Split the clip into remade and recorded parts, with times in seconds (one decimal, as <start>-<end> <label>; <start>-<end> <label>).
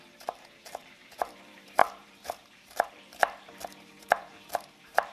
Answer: 0.0-5.1 remade